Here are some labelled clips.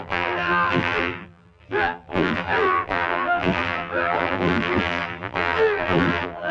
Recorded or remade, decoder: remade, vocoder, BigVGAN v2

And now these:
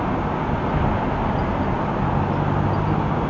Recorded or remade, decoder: recorded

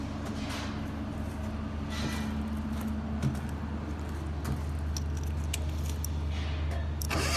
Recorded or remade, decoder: recorded